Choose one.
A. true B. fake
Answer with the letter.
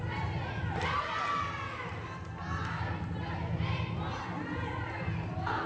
A